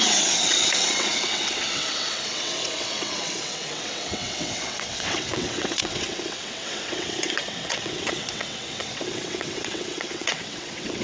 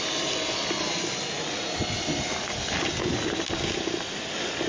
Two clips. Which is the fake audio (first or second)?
first